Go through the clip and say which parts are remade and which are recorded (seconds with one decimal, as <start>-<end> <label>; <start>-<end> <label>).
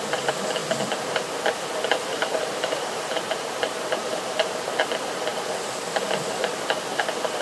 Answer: 0.0-2.0 recorded; 2.0-4.8 remade; 4.8-7.4 recorded